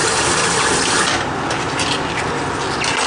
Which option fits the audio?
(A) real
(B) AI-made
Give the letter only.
A